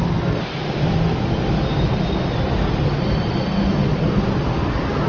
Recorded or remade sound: recorded